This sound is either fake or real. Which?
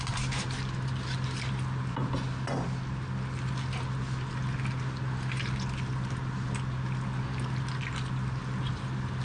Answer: real